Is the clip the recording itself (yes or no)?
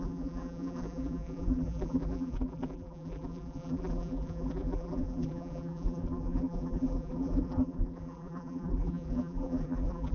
no